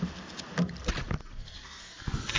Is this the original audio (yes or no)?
yes